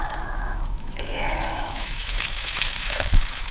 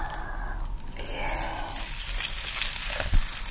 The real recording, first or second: second